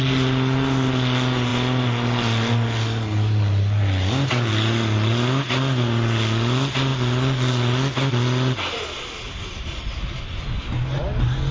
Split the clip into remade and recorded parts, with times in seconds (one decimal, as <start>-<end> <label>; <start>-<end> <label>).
0.0-11.5 recorded